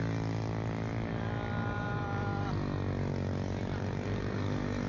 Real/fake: real